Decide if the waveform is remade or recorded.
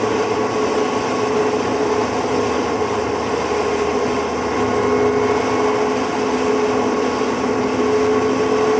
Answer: recorded